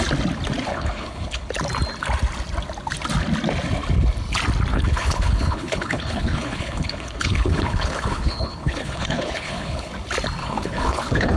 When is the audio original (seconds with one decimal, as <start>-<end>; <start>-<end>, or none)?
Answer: 0.0-0.7; 1.5-4.7; 9.9-10.4